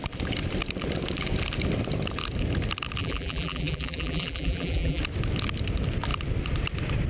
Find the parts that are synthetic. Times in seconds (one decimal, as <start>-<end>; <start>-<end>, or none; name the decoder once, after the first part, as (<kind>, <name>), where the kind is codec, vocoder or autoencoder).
3.0-5.0 (vocoder, BigVGAN v2)